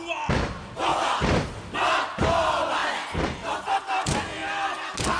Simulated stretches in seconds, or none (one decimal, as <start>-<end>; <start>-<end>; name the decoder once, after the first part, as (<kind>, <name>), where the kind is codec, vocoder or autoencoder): none